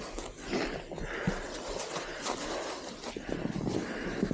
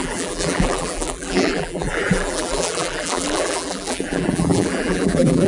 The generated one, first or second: second